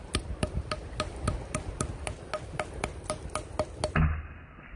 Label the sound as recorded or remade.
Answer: recorded